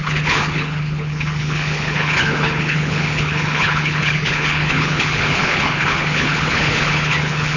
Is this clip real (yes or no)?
no